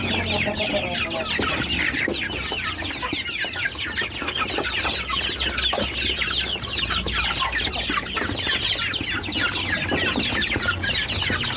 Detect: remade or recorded recorded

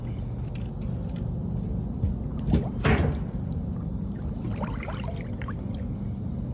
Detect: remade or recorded recorded